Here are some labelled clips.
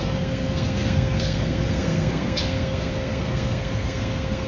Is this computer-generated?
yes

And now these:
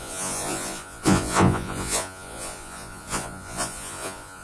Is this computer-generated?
yes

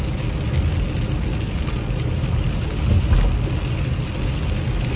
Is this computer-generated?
no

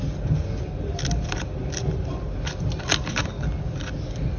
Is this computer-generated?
no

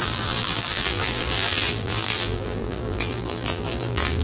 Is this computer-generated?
yes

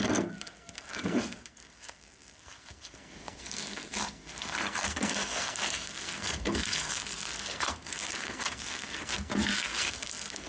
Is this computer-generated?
yes